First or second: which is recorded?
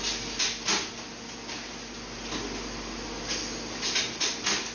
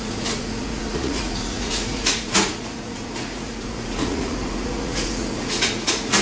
first